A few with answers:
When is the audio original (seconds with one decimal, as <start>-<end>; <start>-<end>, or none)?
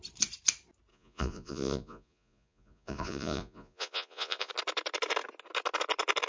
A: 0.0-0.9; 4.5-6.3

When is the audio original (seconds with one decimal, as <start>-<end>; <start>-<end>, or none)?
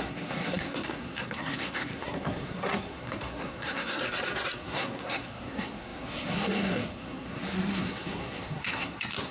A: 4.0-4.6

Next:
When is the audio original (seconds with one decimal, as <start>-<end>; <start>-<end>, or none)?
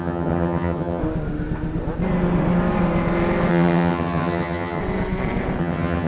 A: 1.0-3.5; 4.8-5.6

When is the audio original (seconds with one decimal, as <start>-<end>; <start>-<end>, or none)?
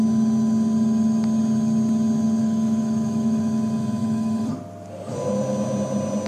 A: 0.0-2.4; 3.4-4.0; 4.6-6.3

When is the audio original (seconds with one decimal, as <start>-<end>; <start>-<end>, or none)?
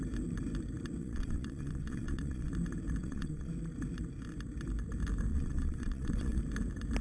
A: 0.0-1.0; 2.5-3.0; 3.5-5.3; 6.4-7.0